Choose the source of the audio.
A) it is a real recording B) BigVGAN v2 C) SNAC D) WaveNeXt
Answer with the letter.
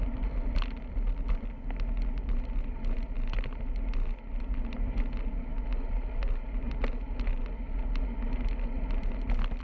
A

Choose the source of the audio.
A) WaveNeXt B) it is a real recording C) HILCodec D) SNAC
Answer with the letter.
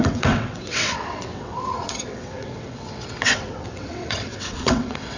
A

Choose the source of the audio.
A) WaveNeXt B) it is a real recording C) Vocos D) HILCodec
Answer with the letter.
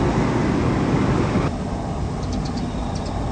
B